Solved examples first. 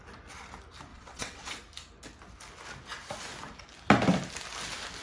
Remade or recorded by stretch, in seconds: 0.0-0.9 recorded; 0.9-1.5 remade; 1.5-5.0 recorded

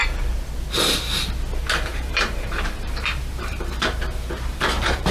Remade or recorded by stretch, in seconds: 0.0-1.9 recorded; 1.9-5.1 remade

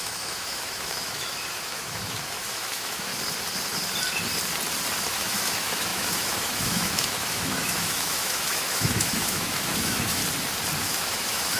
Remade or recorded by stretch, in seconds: 0.0-3.1 remade; 3.1-5.1 recorded; 5.1-10.2 remade; 10.2-10.8 recorded; 10.8-11.6 remade

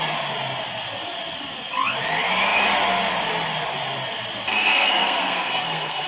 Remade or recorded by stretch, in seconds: 0.0-4.5 recorded; 4.5-6.1 remade

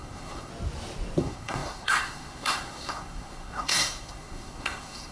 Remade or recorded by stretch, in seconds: 0.0-0.5 remade; 0.5-1.2 recorded; 1.2-5.1 remade

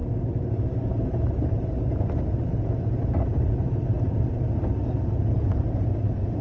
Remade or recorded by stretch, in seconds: 0.0-0.8 recorded; 0.8-6.4 remade